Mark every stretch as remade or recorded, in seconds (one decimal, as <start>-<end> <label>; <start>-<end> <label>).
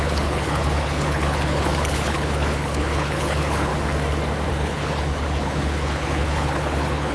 0.0-3.7 remade; 3.7-4.5 recorded; 4.5-7.1 remade